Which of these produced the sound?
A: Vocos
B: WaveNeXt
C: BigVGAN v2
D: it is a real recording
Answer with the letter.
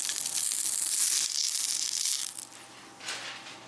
D